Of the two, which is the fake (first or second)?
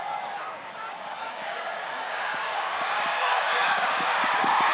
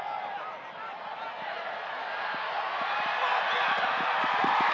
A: first